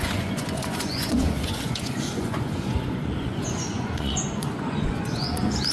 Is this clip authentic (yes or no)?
no